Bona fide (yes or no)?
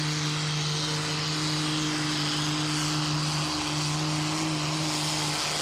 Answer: yes